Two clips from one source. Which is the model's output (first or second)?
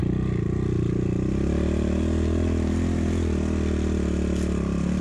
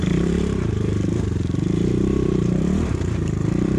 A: second